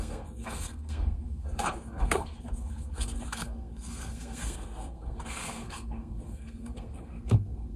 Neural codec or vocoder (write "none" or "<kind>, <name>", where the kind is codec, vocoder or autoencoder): codec, SNAC